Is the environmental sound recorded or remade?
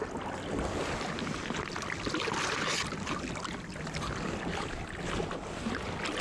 recorded